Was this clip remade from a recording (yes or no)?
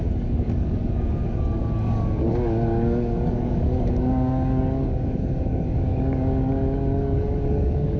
yes